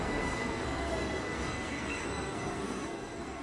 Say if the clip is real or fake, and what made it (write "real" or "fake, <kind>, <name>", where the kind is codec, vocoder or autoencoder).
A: fake, codec, SNAC